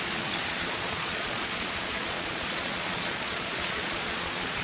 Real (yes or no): no